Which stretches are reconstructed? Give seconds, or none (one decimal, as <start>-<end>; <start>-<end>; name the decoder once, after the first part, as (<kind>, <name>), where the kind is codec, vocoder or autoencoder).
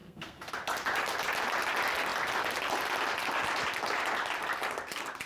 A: 0.0-0.5 (codec, SNAC)